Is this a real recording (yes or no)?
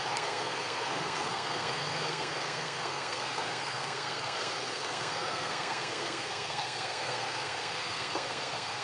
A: no